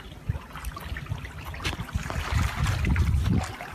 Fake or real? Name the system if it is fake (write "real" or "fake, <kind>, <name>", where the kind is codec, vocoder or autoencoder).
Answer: real